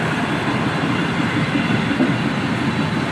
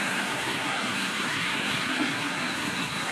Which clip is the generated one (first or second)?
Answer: second